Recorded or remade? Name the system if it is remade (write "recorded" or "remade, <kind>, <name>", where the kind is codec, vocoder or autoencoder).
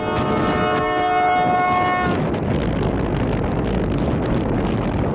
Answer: recorded